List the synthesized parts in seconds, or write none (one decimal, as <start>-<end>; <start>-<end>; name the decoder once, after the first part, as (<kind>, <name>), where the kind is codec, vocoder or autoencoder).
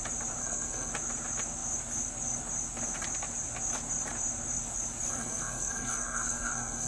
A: 0.4-0.9 (codec, SNAC); 5.1-6.9